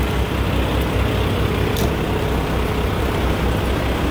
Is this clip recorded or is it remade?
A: recorded